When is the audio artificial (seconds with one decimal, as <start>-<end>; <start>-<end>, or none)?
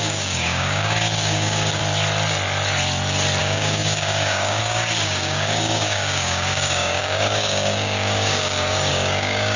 0.0-1.8; 3.4-9.6